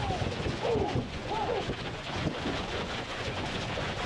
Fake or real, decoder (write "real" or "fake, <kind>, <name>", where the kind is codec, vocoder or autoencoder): fake, vocoder, Vocos